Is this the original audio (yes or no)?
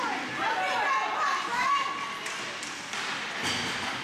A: yes